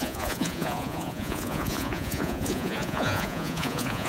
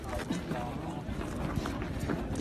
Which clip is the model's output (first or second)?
first